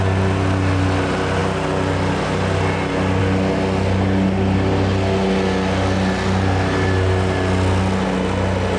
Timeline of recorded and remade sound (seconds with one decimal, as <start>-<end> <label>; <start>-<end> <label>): 0.0-8.8 recorded